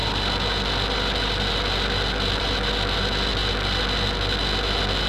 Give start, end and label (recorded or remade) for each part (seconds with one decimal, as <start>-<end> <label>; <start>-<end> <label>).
0.0-5.1 recorded